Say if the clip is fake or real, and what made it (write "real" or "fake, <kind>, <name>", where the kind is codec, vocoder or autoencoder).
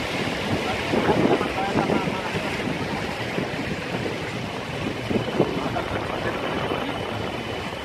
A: real